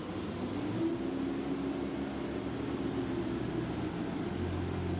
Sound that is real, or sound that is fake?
real